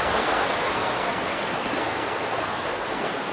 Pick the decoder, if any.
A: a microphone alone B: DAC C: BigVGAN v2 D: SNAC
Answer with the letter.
D